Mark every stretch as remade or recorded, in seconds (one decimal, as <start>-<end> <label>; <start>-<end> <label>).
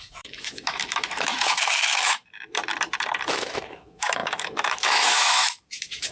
0.0-2.6 remade; 2.6-3.3 recorded; 3.3-6.1 remade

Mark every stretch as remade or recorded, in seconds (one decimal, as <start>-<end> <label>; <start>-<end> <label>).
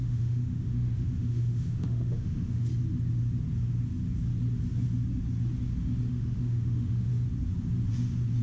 0.0-2.7 remade; 2.7-6.1 recorded; 6.1-7.1 remade; 7.1-8.4 recorded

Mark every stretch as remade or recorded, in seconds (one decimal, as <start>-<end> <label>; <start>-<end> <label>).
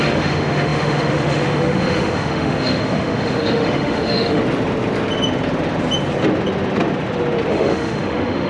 0.0-4.4 remade; 4.4-7.5 recorded; 7.5-8.5 remade